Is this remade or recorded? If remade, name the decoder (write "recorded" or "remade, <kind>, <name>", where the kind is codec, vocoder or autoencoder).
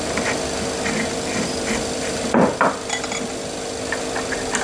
recorded